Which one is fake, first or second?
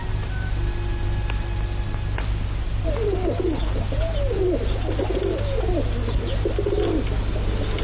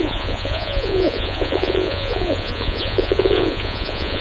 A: second